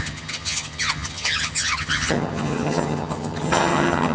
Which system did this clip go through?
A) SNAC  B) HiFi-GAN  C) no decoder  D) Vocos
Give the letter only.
B